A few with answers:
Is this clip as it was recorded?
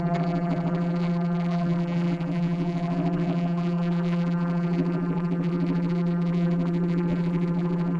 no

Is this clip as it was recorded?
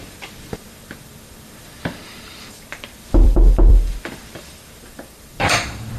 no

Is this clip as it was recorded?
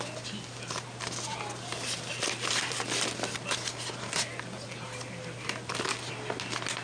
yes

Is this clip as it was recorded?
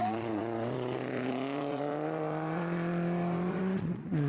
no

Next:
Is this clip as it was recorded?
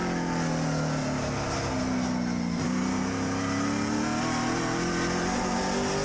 yes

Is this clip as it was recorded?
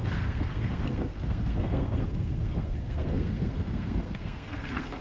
no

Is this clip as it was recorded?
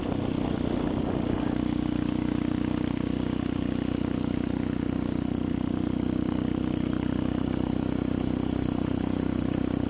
yes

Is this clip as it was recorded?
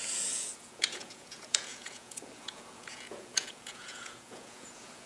no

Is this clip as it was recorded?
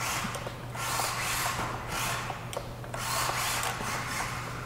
yes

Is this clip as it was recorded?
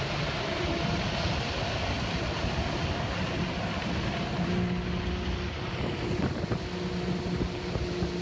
yes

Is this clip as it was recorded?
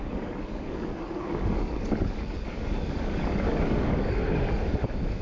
no